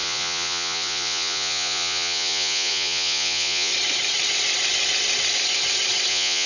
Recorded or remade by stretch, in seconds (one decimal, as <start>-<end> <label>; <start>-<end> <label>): 0.0-3.7 remade; 3.7-6.1 recorded; 6.1-6.5 remade